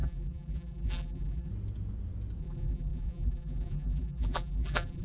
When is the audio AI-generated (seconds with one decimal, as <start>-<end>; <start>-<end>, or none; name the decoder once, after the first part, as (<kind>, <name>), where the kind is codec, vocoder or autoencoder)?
0.0-1.5 (vocoder, BigVGAN v2); 2.4-5.0